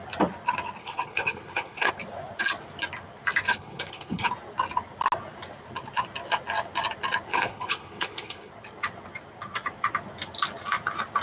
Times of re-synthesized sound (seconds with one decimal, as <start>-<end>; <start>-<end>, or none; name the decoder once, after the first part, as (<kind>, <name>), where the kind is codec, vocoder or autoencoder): 0.8-1.9 (codec, HILCodec); 3.5-4.3; 7.3-8.5